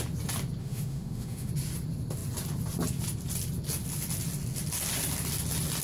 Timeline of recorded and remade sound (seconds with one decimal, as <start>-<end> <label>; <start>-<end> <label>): 0.0-0.6 recorded; 0.6-1.5 remade; 1.5-5.8 recorded